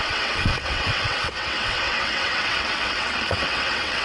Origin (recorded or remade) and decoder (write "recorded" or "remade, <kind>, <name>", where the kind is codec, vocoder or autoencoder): remade, vocoder, WaveNeXt